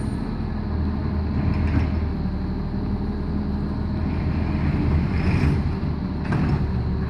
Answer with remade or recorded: recorded